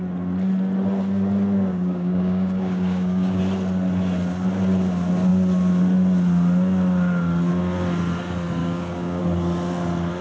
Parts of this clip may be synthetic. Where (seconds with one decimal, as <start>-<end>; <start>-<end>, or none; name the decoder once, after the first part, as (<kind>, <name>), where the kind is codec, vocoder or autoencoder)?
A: 1.7-3.4 (codec, DAC); 8.6-9.2